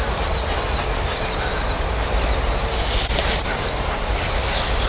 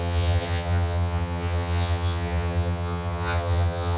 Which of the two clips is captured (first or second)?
first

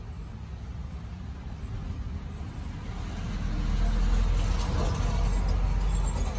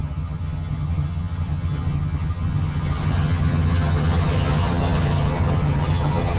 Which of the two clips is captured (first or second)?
first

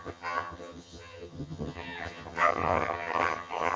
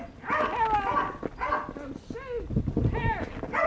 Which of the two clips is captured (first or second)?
second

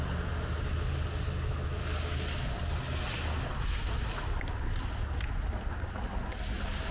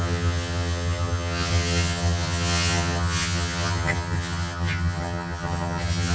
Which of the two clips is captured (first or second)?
first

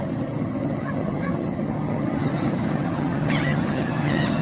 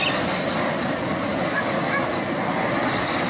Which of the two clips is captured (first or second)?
second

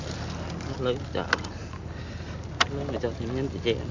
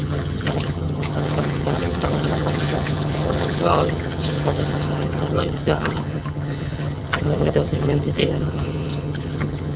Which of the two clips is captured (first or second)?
first